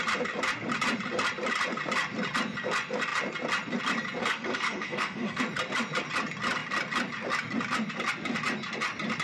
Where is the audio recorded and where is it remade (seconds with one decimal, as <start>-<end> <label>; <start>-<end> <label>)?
0.0-4.2 recorded; 4.2-5.4 remade; 5.4-9.2 recorded